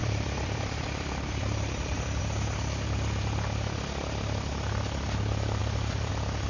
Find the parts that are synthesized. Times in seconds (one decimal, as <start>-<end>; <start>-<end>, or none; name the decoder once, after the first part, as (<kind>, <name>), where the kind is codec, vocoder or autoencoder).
0.0-2.2 (vocoder, BigVGAN v2); 5.6-6.1